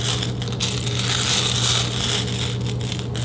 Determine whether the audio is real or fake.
real